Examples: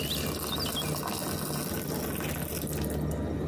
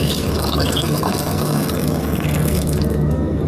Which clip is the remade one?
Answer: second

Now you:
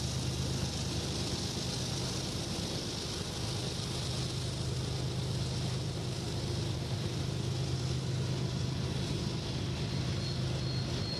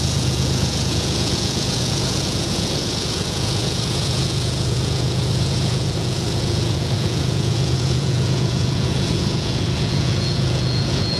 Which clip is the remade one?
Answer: second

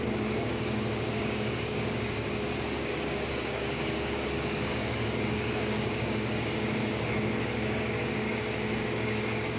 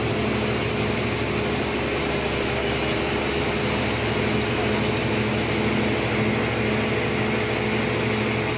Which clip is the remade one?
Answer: first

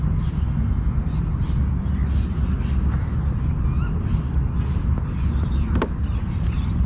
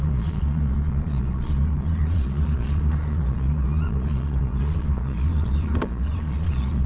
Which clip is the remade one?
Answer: second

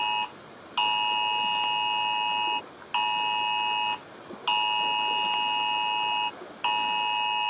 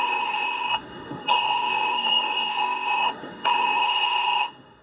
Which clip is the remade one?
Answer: second